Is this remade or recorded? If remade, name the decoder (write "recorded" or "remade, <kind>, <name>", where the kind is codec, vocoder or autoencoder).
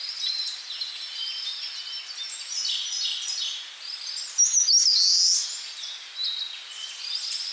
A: recorded